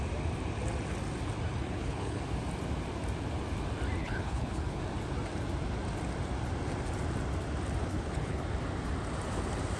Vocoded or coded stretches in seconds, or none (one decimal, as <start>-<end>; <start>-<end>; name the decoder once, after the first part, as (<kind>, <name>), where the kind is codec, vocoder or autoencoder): 1.5-2.2 (codec, HILCodec); 4.0-4.8; 7.8-8.4